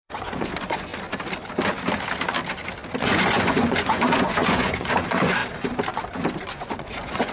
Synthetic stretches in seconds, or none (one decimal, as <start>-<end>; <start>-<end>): 0.0-0.9; 3.0-5.4; 6.4-7.3